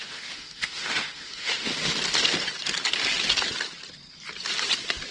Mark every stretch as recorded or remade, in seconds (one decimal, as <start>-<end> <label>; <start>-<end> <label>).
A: 0.0-1.7 remade; 1.7-5.1 recorded